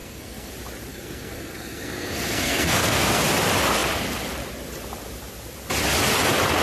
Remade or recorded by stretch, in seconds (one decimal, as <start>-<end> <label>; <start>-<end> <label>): 0.0-0.5 remade; 0.5-0.9 recorded; 0.9-3.2 remade; 3.2-6.6 recorded